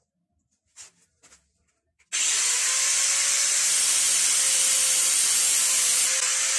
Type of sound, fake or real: real